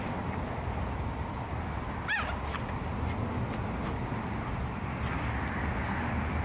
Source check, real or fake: real